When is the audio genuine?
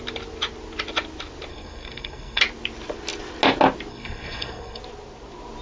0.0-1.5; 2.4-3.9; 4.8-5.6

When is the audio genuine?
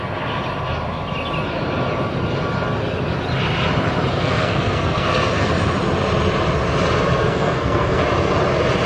0.0-4.1; 5.5-7.2; 8.0-8.9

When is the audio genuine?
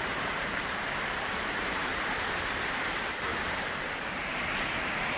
1.9-2.8